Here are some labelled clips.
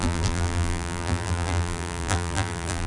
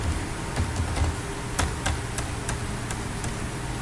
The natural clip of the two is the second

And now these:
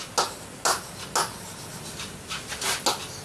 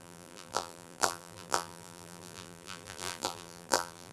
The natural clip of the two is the first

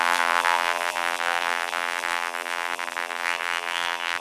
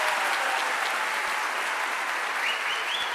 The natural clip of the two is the second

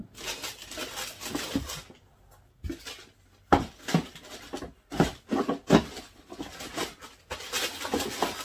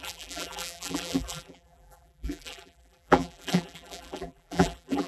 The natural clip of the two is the first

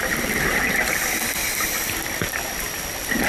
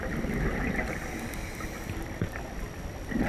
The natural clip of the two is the second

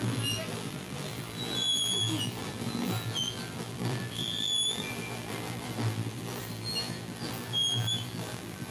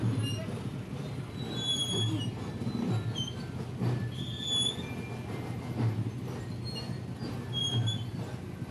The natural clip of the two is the second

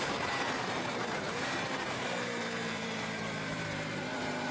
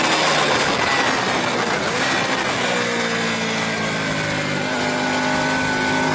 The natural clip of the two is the second